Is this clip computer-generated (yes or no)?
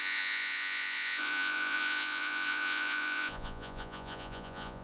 yes